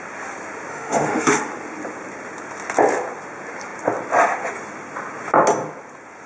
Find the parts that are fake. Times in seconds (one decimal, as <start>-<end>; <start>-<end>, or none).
0.7-1.4